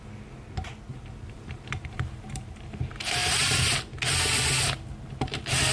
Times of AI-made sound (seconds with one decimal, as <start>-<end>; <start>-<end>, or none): 0.9-2.8

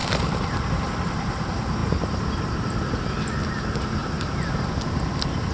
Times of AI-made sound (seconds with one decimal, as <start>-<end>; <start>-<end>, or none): 0.0-0.8; 4.0-4.8